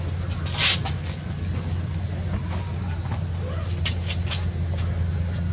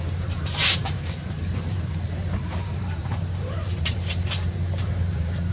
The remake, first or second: second